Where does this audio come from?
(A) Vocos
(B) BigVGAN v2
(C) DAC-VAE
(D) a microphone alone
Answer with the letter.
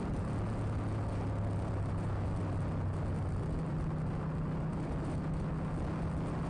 D